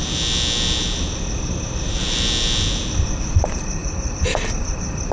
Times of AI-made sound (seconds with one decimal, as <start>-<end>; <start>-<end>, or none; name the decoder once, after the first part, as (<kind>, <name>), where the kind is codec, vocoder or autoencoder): 3.8-4.4 (vocoder, BigVGAN v2)